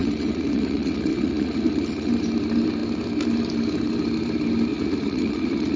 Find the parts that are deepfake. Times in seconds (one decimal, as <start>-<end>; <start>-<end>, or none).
0.0-2.1; 4.7-5.8